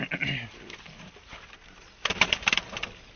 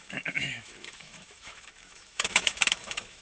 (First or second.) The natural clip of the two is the first